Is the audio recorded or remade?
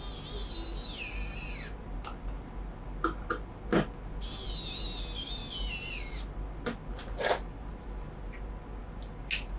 recorded